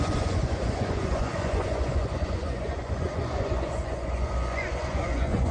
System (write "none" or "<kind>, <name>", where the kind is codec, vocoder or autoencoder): vocoder, Vocos